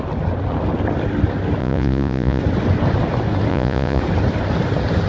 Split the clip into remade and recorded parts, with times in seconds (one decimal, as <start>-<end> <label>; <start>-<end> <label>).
0.0-1.6 recorded; 1.6-2.4 remade; 2.4-3.5 recorded; 3.5-4.0 remade; 4.0-5.1 recorded